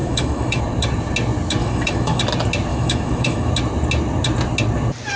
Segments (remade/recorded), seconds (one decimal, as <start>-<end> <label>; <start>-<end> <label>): 0.0-0.6 remade; 0.6-1.6 recorded; 1.6-2.2 remade; 2.2-2.7 recorded; 2.7-3.5 remade; 3.5-5.2 recorded